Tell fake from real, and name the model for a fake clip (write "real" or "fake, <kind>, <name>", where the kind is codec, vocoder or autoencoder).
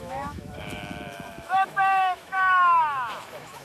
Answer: fake, autoencoder, DAC-VAE